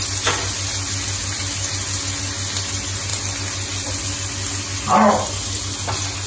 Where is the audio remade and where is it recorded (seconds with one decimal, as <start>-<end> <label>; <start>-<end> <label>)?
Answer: 0.0-6.3 recorded